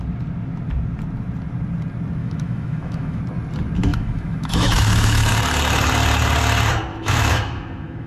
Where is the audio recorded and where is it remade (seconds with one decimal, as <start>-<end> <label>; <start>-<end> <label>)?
0.0-2.2 recorded; 2.2-3.2 remade; 3.2-3.9 recorded; 3.9-5.3 remade; 5.3-6.9 recorded; 6.9-8.1 remade